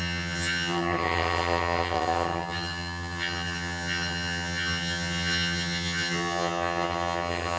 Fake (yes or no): yes